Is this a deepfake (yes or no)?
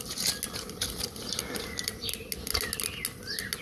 no